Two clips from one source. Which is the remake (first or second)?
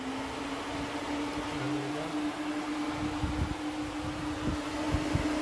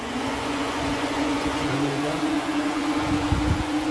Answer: second